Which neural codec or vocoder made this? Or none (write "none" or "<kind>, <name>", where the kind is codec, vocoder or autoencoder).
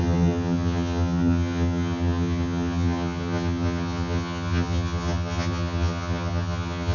vocoder, HiFi-GAN